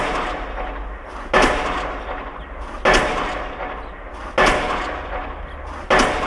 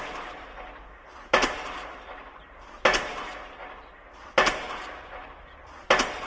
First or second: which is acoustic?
first